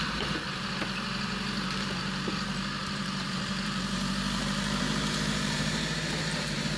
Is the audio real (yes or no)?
no